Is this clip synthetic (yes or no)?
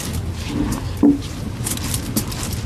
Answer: no